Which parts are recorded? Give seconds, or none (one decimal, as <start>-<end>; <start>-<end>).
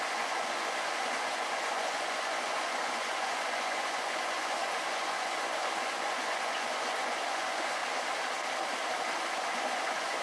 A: 7.8-9.2